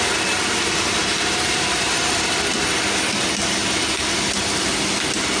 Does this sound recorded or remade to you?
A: recorded